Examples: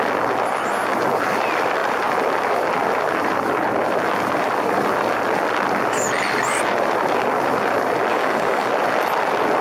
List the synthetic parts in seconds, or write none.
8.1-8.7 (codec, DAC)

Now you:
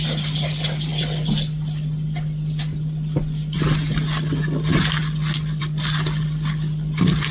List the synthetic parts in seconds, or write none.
none

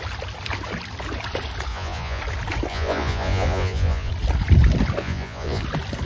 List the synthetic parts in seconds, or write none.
1.7-2.2 (vocoder, Vocos); 2.7-4.1; 5.0-5.6